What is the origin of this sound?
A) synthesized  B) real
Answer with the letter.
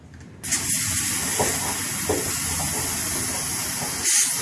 B